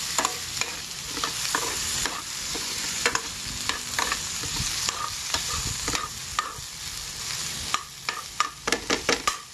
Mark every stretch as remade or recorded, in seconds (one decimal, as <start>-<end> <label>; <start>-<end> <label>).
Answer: 0.0-2.5 recorded; 2.5-3.3 remade; 3.3-9.5 recorded

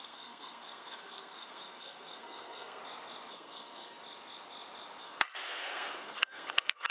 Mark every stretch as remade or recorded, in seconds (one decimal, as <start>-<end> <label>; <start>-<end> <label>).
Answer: 0.0-2.8 remade; 2.8-3.3 recorded; 3.3-4.0 remade; 4.0-5.0 recorded; 5.0-6.9 remade